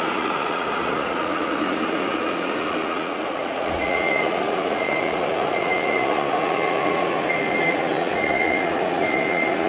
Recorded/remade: remade